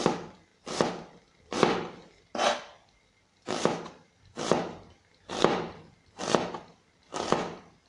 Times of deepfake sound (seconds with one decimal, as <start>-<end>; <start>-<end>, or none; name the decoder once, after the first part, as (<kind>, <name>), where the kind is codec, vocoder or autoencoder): 0.0-0.5 (vocoder, BigVGAN v2); 1.2-7.9